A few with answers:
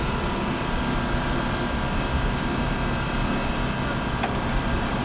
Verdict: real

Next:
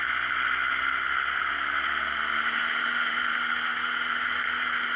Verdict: real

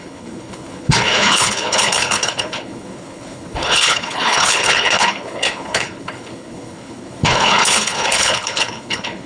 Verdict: fake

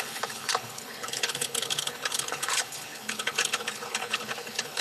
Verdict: fake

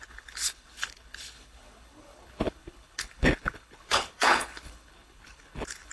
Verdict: fake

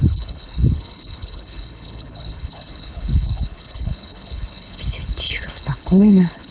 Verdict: fake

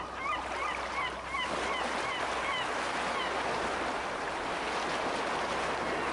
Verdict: real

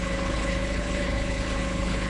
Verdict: fake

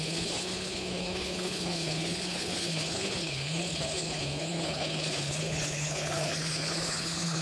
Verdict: fake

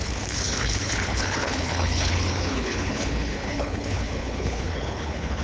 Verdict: fake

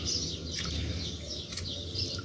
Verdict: real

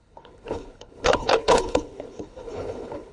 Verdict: fake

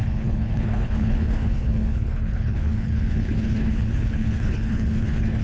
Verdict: fake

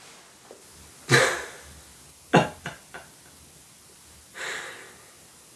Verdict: real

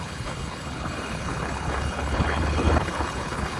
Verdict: fake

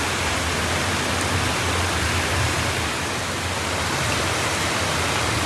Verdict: real